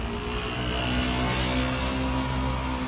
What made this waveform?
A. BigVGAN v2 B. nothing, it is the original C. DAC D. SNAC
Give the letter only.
B